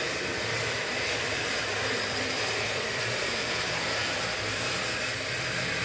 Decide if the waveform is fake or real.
fake